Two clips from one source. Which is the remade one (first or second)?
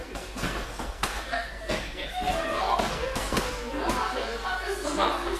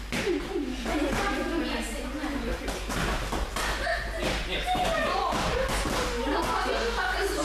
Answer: first